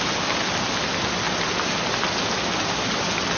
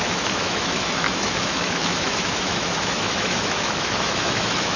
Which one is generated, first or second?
second